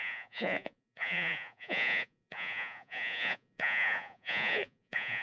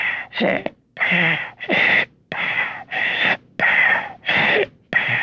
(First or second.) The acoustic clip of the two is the second